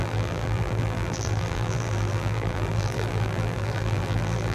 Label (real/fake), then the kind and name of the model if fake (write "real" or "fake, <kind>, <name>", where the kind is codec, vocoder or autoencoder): fake, vocoder, BigVGAN v2